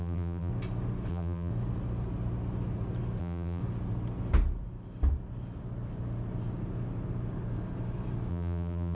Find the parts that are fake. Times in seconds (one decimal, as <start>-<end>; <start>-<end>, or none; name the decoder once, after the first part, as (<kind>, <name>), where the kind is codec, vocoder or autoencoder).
0.0-0.5 (vocoder, BigVGAN v2); 1.1-1.5; 3.2-3.6; 8.3-8.9